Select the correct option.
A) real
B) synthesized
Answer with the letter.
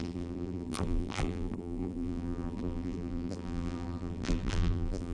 B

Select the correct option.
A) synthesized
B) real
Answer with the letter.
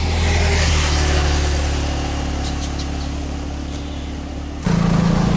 B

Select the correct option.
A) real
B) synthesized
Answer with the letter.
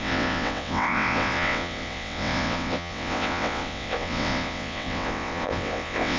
B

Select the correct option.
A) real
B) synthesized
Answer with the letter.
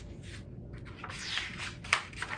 A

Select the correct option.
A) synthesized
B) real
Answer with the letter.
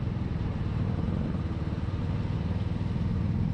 B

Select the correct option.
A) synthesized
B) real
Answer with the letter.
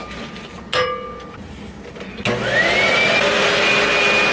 B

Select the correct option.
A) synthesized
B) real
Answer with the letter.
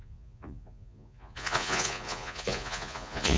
A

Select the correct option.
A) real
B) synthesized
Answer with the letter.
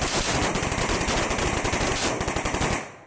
A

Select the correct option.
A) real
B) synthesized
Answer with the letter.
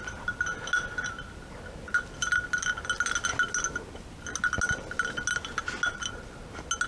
A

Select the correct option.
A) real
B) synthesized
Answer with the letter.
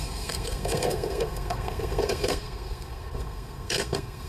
B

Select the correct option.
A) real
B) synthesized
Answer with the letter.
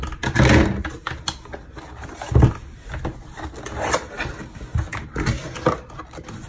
A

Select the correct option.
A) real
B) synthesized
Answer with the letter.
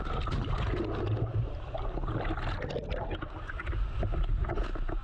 A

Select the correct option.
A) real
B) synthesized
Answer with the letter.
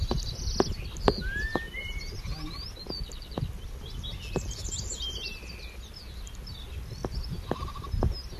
A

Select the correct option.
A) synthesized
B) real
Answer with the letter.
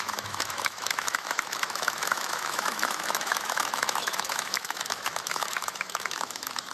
A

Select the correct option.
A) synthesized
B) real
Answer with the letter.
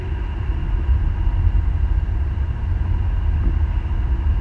B